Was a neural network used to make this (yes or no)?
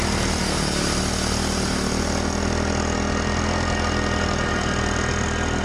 no